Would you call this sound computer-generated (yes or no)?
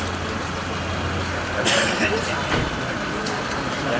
no